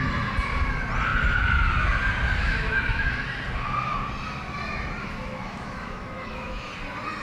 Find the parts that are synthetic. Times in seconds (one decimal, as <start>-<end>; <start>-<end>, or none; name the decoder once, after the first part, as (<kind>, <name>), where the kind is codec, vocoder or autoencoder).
2.4-3.1 (autoencoder, DAC-VAE); 5.0-6.7